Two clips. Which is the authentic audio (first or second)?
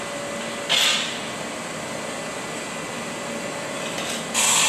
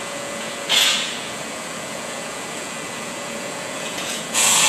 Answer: first